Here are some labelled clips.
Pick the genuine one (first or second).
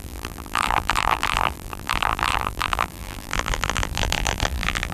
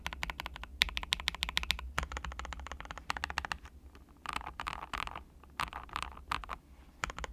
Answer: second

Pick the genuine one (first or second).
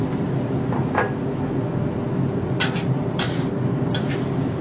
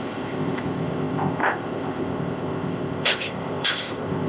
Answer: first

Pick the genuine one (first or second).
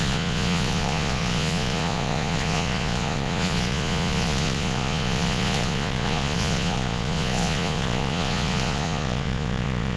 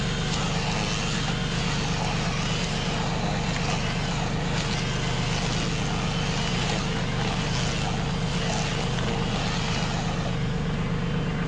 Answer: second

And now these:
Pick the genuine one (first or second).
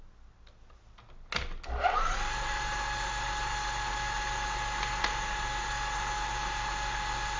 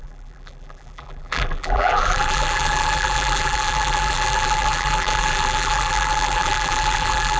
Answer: first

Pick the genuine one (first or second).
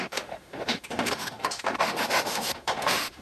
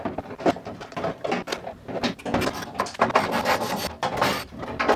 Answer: second